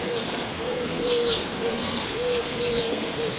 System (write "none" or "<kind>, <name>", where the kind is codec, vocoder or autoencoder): codec, SNAC